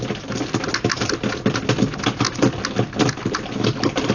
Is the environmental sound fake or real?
real